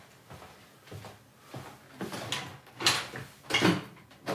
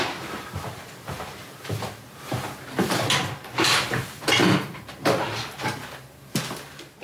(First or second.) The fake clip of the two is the second